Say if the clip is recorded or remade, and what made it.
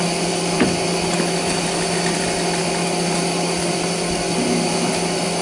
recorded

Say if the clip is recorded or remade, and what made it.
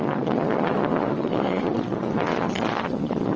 remade, vocoder, Vocos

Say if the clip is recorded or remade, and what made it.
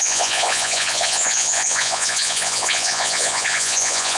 remade, vocoder, Vocos